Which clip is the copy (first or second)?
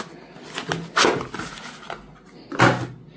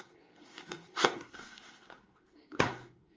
second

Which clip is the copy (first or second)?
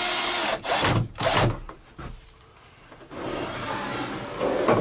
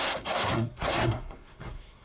second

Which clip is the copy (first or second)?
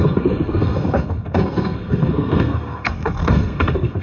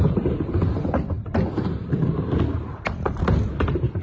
first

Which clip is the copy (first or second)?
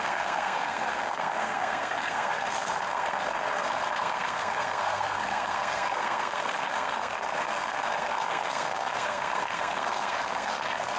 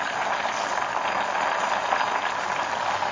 first